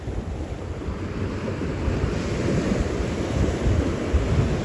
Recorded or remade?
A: recorded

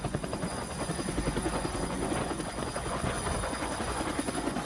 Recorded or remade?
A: remade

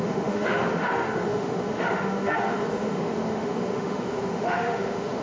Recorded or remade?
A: remade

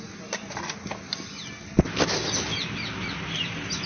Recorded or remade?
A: recorded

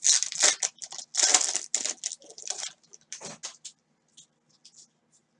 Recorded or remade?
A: recorded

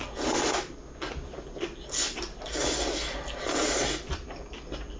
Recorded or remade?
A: recorded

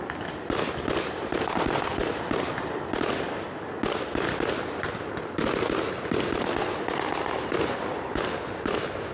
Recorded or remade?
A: recorded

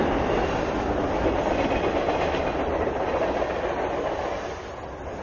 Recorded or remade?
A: recorded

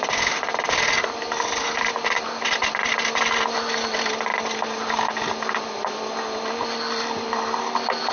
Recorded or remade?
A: recorded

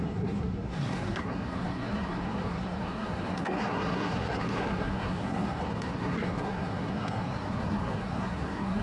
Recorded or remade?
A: remade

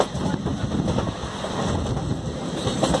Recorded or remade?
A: recorded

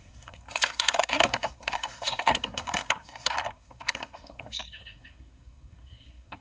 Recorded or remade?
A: remade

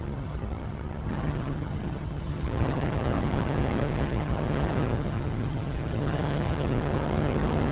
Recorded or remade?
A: remade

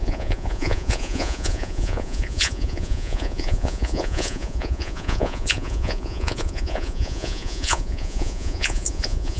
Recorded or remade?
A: remade